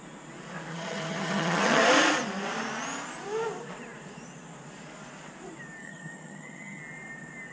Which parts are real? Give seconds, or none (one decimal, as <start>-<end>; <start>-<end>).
0.0-0.7; 1.8-5.8; 6.8-7.5